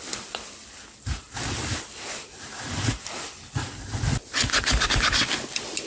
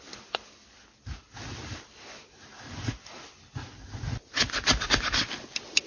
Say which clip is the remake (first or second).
first